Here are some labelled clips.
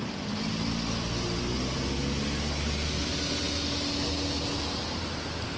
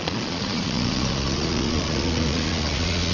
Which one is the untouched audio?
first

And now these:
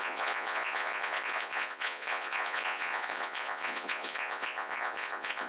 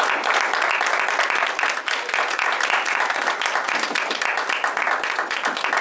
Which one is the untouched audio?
second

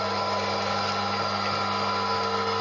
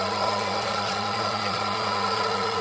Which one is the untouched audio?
first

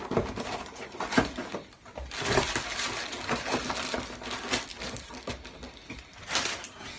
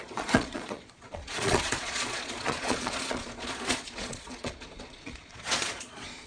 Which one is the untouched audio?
first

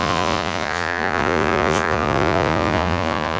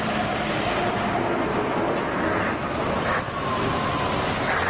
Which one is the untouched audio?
second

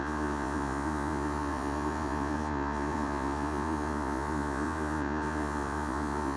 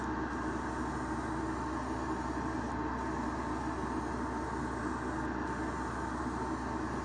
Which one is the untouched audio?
second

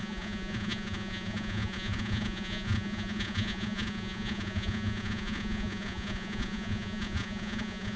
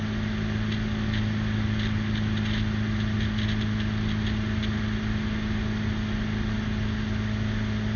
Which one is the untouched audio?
second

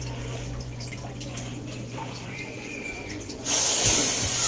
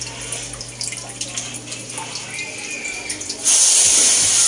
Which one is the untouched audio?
second